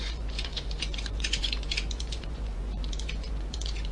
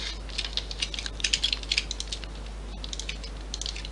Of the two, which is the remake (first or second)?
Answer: first